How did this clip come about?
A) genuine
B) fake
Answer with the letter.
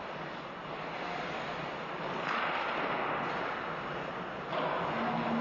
A